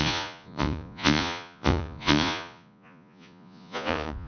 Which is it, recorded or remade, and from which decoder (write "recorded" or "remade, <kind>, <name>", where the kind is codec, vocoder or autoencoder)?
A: remade, vocoder, Vocos